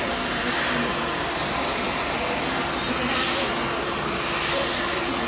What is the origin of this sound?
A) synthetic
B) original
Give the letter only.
B